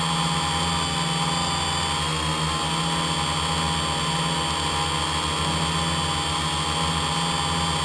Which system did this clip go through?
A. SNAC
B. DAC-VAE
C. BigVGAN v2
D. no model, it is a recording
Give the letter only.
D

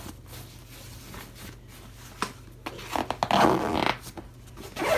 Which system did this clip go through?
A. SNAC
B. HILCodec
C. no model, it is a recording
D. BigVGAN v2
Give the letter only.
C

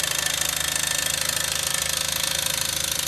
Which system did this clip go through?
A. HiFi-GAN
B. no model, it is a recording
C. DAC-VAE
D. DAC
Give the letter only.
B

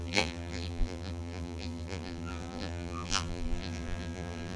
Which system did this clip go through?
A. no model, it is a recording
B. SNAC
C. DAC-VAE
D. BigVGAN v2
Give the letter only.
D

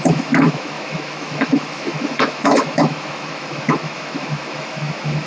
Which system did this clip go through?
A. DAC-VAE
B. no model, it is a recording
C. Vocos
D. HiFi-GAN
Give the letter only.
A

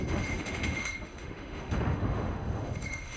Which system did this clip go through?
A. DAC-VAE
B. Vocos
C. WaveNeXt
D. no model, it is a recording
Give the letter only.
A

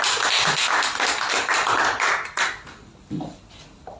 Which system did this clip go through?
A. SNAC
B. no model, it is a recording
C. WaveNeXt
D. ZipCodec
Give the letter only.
B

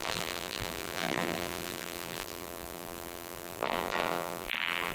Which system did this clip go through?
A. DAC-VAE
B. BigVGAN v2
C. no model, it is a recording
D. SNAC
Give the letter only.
B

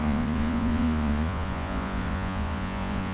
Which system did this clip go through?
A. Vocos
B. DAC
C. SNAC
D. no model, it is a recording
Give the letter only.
A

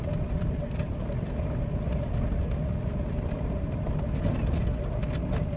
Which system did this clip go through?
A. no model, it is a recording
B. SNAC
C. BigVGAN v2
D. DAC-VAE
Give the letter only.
A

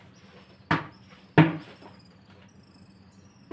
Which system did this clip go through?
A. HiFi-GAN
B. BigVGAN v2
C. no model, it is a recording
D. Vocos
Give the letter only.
C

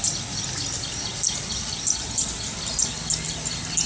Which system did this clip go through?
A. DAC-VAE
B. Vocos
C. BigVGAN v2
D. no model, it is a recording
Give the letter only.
D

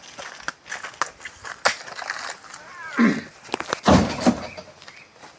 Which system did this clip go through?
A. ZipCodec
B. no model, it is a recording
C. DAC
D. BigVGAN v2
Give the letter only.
B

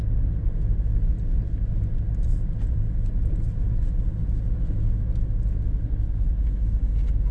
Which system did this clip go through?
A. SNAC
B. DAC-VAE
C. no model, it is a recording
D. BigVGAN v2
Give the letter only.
C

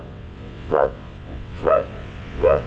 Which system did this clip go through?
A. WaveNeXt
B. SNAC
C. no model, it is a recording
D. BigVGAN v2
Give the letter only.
A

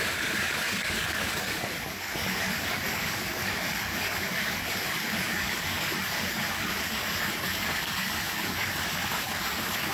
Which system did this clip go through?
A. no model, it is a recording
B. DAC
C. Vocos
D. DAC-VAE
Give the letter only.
B